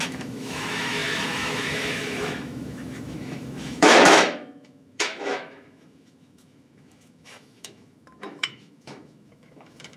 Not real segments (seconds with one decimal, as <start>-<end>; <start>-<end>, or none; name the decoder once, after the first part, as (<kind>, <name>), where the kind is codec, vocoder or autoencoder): 0.0-10.0 (autoencoder, DAC-VAE)